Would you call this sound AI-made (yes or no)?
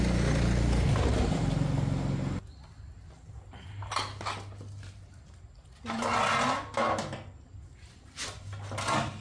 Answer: no